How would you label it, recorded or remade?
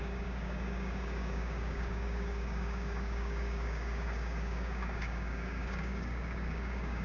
remade